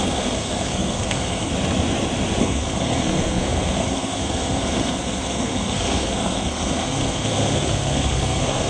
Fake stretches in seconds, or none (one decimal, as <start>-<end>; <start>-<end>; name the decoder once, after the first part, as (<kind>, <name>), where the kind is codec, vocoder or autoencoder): 0.0-1.5 (codec, SNAC); 2.4-8.7